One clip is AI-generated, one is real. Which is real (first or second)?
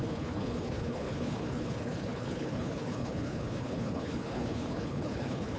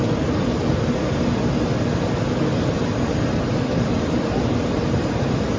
second